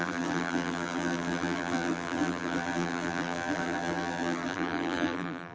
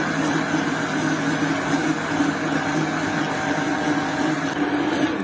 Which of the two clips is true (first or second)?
second